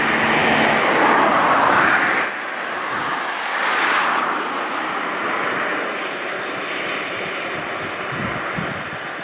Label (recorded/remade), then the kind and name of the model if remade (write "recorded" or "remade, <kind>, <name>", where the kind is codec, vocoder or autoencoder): recorded